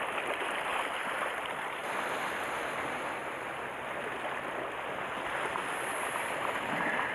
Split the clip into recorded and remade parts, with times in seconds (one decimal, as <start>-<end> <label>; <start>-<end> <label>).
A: 0.0-1.8 remade; 1.8-2.4 recorded; 2.4-3.2 remade; 3.2-5.8 recorded; 5.8-7.1 remade